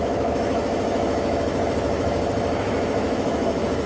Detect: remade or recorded remade